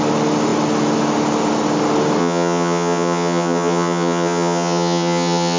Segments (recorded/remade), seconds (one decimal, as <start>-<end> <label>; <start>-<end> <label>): 0.0-2.2 recorded; 2.2-5.6 remade